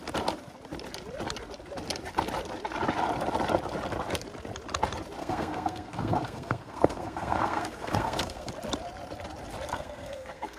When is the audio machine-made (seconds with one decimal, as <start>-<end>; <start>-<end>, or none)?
5.2-8.5; 9.7-10.6